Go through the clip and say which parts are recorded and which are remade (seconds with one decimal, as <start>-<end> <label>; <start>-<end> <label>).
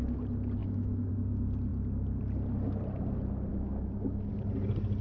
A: 0.0-0.6 recorded; 0.6-1.1 remade; 1.1-3.5 recorded; 3.5-4.3 remade; 4.3-5.0 recorded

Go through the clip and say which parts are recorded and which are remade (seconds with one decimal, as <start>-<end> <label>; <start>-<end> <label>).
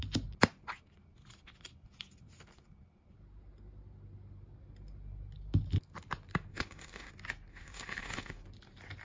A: 0.0-6.5 recorded; 6.5-7.1 remade; 7.1-7.5 recorded; 7.5-8.4 remade; 8.4-9.0 recorded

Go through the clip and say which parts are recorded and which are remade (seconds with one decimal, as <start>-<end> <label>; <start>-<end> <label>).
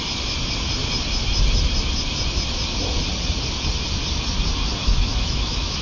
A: 0.0-4.8 recorded; 4.8-5.8 remade